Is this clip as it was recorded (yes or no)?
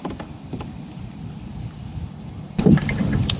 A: no